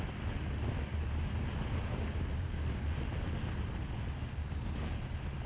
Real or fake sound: real